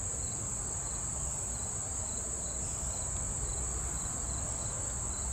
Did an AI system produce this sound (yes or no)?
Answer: no